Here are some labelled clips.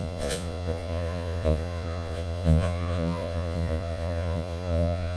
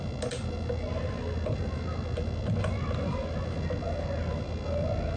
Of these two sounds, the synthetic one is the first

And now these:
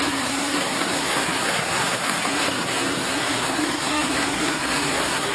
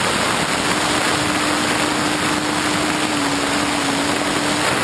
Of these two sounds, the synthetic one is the first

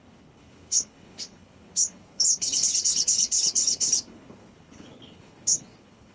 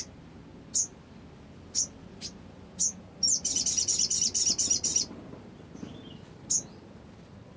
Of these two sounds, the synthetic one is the first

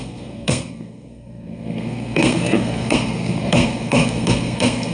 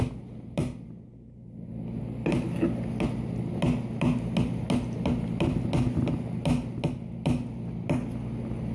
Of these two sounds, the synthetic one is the first